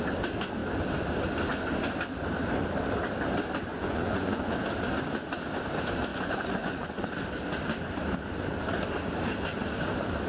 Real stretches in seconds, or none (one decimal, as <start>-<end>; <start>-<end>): 0.0-3.7; 4.5-6.1; 7.0-10.3